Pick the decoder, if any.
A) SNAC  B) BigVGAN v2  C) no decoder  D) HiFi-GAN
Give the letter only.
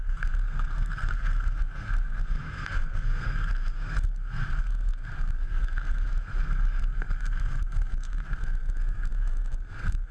A